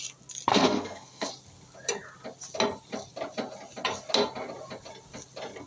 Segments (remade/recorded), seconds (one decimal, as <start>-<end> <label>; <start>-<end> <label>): 0.0-0.5 recorded; 0.5-1.3 remade; 1.3-5.7 recorded